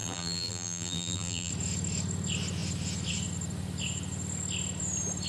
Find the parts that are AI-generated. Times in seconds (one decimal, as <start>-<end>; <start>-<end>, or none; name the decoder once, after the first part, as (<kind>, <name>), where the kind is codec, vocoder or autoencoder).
0.0-1.5 (vocoder, BigVGAN v2)